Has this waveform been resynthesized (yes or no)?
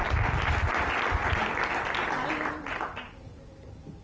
no